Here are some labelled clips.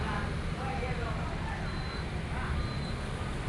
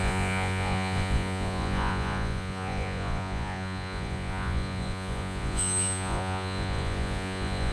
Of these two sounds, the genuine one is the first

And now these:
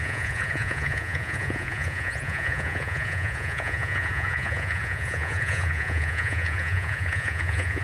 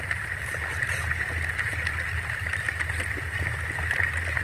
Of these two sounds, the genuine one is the second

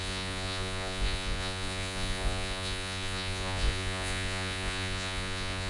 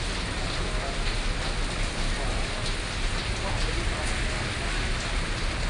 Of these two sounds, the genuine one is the second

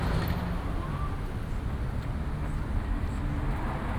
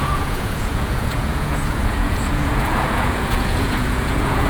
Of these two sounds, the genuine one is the first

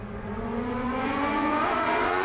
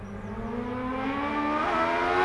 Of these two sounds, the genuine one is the second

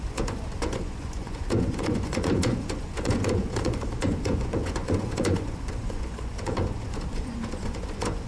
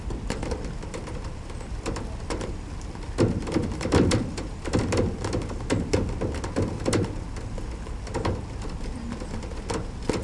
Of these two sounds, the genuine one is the second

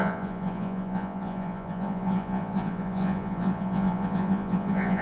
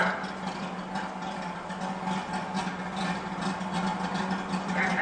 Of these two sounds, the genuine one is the second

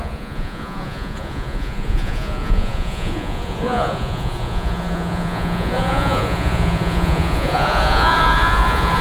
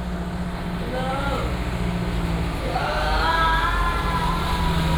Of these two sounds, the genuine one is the second